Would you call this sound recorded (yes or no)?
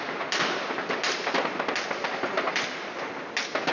yes